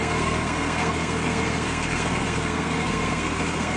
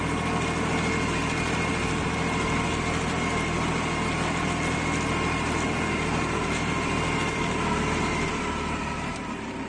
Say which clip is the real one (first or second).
second